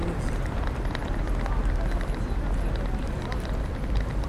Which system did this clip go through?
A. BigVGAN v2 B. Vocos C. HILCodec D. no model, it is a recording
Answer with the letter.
D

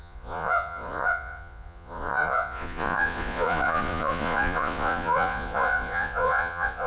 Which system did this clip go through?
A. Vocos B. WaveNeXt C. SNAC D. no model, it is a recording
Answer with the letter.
A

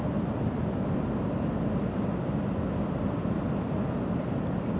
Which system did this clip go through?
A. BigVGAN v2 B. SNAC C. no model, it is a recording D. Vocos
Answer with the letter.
C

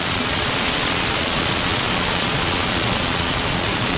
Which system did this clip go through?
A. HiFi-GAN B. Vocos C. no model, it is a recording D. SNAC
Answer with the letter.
B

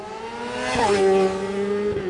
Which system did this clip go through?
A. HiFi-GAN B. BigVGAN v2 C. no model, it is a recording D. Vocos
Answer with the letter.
C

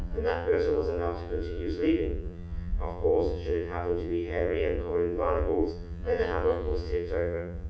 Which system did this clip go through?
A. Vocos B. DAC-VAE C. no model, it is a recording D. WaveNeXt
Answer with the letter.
A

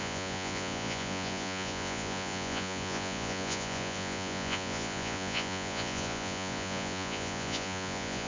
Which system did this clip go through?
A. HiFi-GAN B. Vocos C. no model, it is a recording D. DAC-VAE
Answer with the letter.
B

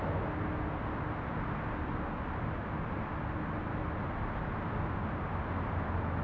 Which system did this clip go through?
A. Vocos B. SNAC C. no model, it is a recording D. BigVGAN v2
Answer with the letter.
C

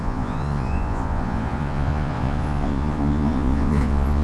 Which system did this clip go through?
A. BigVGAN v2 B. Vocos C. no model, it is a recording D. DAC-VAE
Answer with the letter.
B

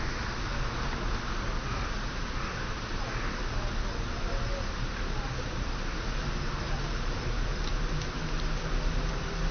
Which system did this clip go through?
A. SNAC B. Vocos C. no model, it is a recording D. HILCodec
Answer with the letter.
C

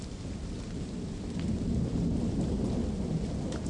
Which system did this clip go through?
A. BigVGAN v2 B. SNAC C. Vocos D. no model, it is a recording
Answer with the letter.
D